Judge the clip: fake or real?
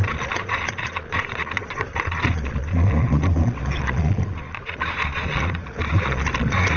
fake